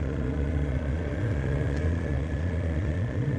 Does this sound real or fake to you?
fake